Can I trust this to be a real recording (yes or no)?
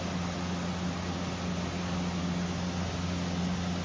yes